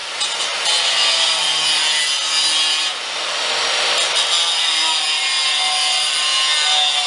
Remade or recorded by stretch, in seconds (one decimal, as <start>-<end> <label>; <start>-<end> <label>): 0.0-7.1 recorded